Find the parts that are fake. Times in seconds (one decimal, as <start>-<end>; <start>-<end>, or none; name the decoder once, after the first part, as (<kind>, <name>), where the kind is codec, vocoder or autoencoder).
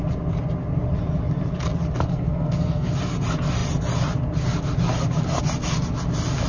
2.1-2.9 (codec, SNAC)